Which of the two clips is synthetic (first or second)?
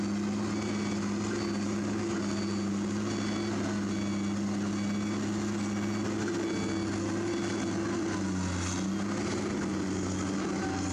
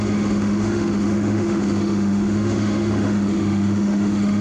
second